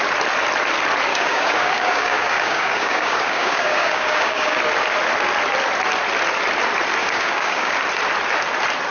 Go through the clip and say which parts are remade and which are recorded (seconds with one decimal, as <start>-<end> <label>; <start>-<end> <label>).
0.0-1.1 recorded; 1.1-4.6 remade; 4.6-7.0 recorded; 7.0-7.7 remade; 7.7-8.9 recorded